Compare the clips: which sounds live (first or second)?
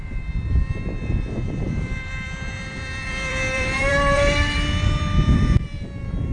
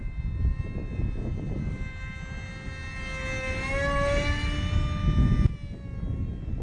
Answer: second